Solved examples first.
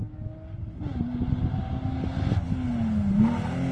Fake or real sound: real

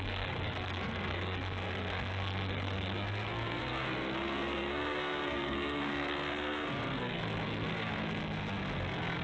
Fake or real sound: fake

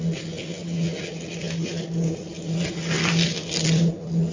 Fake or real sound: real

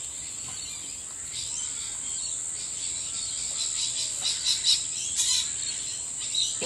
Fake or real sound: real